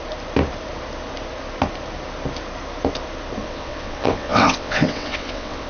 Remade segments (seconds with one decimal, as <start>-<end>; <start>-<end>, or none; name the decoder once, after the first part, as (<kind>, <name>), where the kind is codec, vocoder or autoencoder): 3.4-5.7 (vocoder, WaveNeXt)

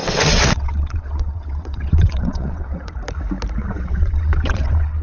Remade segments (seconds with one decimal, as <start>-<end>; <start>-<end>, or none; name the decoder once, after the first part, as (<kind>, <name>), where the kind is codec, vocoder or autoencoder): 0.0-2.9 (vocoder, WaveNeXt); 3.6-5.0

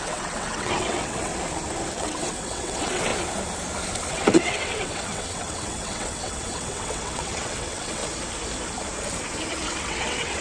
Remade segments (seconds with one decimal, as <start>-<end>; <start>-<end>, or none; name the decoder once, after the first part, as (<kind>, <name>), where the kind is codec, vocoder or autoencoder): 0.0-1.3 (vocoder, WaveNeXt); 2.0-3.1; 4.1-8.0; 9.5-10.4

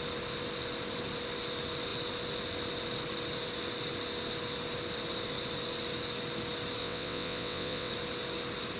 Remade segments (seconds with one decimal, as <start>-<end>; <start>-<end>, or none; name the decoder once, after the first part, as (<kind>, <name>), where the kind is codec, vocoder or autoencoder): 6.8-7.9 (vocoder, WaveNeXt)

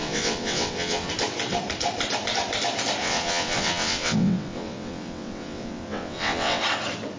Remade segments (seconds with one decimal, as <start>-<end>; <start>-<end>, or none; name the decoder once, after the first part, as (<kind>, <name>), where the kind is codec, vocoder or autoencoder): 0.0-1.1 (vocoder, WaveNeXt); 3.0-6.6